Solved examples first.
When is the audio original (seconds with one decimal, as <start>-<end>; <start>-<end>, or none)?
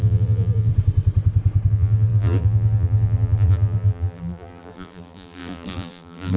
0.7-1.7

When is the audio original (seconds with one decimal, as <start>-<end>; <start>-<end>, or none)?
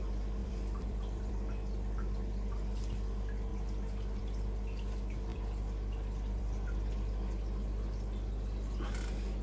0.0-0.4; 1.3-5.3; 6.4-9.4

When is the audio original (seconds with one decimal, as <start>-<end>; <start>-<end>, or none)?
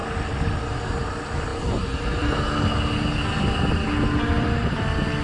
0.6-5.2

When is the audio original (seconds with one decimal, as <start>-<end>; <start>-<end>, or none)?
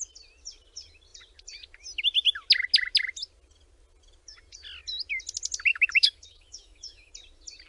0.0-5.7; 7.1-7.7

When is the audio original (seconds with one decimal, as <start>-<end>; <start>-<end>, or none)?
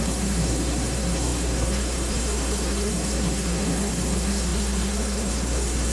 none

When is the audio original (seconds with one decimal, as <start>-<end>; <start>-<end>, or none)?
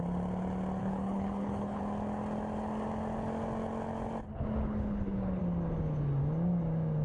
0.0-0.8; 1.8-4.3; 5.4-7.0